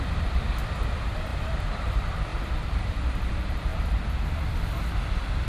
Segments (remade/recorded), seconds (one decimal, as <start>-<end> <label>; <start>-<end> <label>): 0.0-3.7 remade; 3.7-5.5 recorded